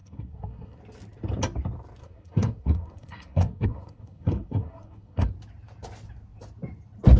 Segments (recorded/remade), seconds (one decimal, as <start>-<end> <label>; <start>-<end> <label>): 0.0-0.8 remade; 0.8-2.0 recorded; 2.0-5.3 remade; 5.3-7.2 recorded